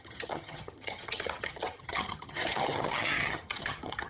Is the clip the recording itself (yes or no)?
no